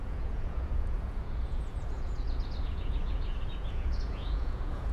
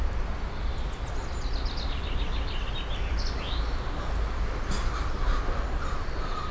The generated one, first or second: first